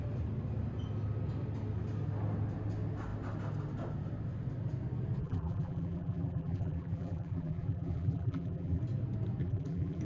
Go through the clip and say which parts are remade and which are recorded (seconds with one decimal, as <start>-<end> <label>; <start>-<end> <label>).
0.0-5.2 recorded; 5.2-8.8 remade; 8.8-9.4 recorded; 9.4-10.0 remade